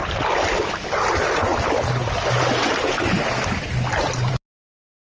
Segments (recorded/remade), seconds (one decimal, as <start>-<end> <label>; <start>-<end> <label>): 0.0-5.0 recorded